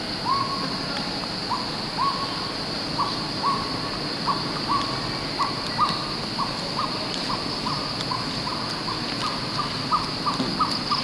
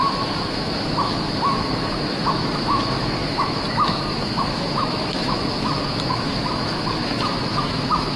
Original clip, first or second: first